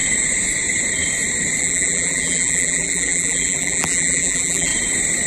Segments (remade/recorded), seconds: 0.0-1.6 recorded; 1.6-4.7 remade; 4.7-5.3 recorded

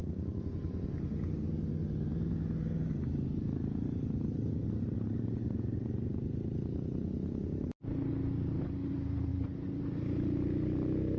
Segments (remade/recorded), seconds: 0.0-11.2 recorded

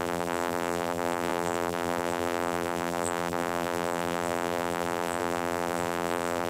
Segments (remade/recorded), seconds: 0.0-6.5 remade

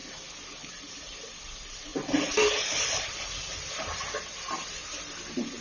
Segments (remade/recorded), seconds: 0.0-0.7 recorded; 0.7-1.9 remade; 1.9-2.7 recorded; 2.7-5.6 remade

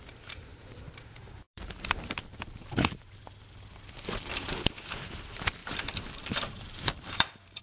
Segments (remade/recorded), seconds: 0.0-0.5 recorded; 0.5-3.7 remade; 3.7-5.6 recorded; 5.6-7.6 remade

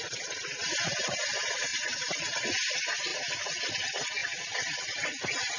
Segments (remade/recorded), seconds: 0.0-1.7 remade; 1.7-2.5 recorded; 2.5-5.6 remade